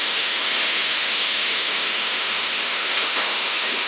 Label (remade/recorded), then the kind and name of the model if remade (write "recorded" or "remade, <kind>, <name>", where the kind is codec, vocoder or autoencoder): remade, autoencoder, DAC-VAE